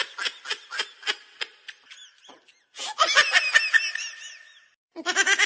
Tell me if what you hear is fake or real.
real